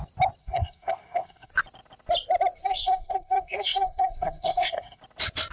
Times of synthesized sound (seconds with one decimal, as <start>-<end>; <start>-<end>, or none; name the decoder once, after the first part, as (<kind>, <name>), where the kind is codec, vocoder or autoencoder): 0.4-1.5 (codec, SNAC); 2.6-5.0